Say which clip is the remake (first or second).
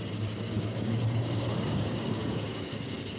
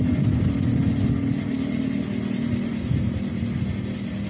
first